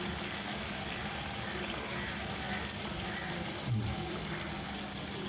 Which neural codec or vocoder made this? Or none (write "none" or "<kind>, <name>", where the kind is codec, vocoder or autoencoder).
none